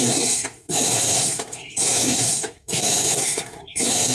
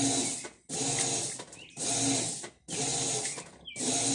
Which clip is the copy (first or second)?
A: first